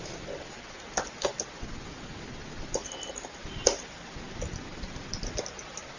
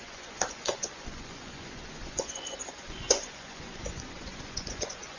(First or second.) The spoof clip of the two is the second